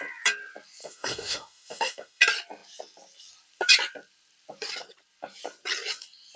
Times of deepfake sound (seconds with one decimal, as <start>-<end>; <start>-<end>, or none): 0.8-2.2